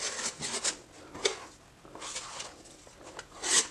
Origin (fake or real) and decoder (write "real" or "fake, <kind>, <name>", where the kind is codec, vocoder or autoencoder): real